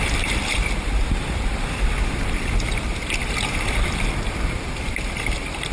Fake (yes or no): yes